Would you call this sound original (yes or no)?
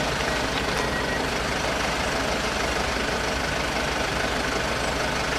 yes